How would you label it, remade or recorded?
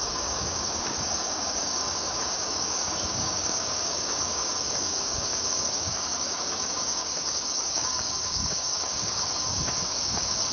remade